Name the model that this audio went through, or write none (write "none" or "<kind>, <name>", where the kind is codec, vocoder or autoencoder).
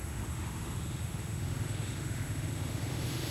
autoencoder, DAC-VAE